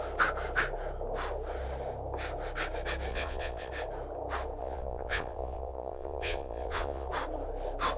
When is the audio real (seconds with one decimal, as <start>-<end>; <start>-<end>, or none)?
0.0-3.1; 3.7-4.6; 7.1-8.0